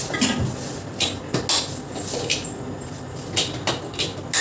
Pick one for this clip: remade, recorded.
recorded